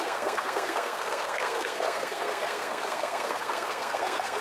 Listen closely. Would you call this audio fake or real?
fake